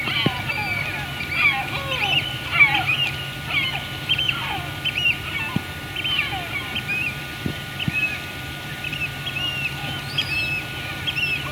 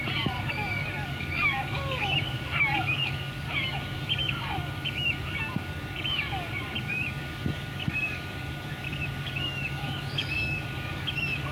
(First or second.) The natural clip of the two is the first